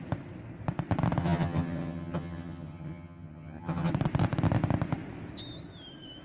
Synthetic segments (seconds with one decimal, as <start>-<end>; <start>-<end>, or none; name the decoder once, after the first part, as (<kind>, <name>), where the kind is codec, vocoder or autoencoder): 1.2-3.9 (vocoder, HiFi-GAN)